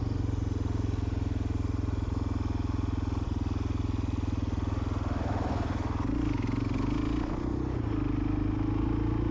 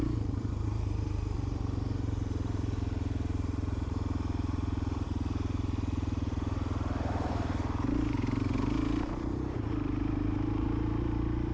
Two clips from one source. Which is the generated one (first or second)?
second